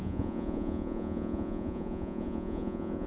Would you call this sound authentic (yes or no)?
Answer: no